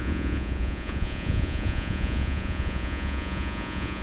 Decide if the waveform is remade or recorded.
remade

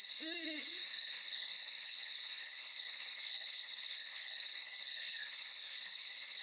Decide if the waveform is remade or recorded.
remade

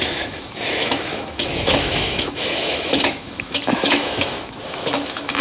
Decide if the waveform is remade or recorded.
remade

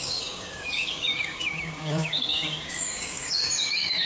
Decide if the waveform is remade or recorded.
remade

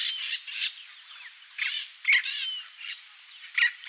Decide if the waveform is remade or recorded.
recorded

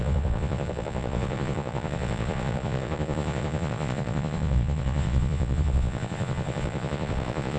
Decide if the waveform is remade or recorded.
remade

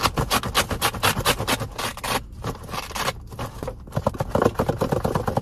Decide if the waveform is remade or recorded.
recorded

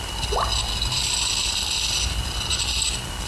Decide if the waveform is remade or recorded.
recorded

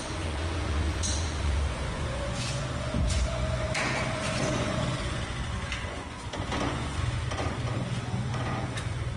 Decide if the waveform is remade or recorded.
remade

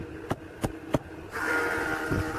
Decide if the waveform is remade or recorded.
recorded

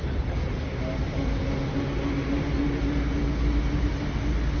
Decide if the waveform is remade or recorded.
recorded